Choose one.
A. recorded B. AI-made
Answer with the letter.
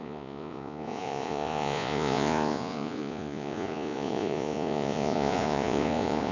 B